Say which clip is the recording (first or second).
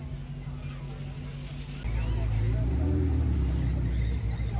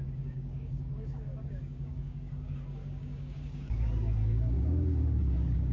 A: first